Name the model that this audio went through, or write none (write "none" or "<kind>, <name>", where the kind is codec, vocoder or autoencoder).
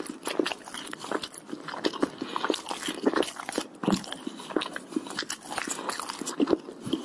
none